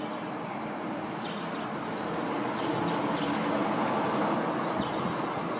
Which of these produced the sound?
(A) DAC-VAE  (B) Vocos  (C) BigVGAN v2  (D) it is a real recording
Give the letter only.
D